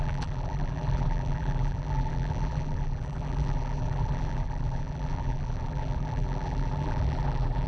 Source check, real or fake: fake